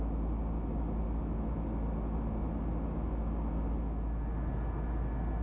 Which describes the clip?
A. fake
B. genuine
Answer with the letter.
B